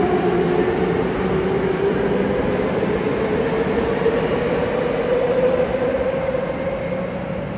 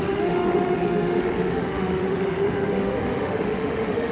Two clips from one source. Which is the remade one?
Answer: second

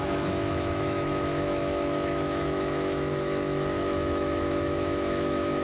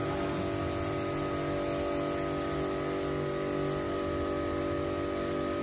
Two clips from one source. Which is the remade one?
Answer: first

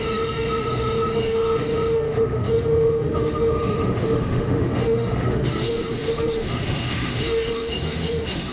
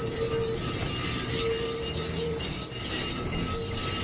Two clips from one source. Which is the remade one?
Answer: first